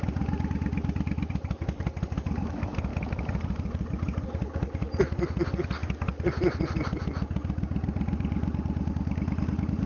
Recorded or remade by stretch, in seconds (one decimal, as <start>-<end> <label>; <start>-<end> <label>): 0.0-9.9 recorded